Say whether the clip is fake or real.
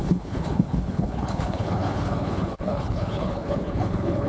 fake